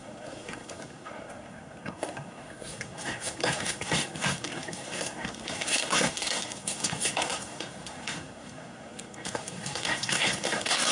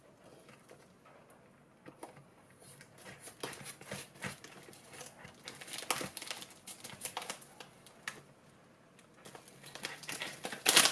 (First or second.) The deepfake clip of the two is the first